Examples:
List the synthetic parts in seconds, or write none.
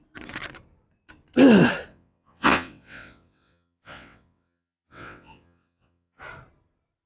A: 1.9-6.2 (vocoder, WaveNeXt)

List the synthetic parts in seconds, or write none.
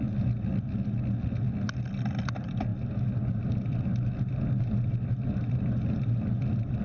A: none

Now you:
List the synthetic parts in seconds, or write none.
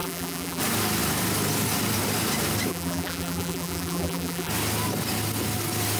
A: 0.0-0.6 (vocoder, BigVGAN v2); 2.7-4.5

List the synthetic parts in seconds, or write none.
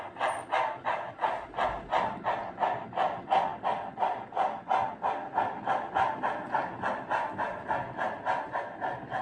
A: none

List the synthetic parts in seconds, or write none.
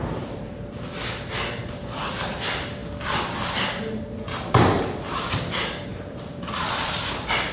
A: 1.6-2.1 (vocoder, BigVGAN v2); 5.9-6.5